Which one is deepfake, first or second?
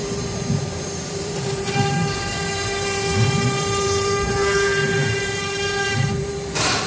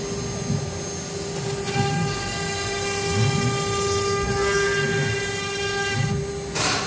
first